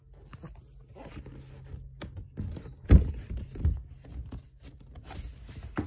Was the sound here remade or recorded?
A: recorded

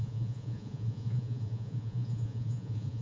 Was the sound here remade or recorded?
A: remade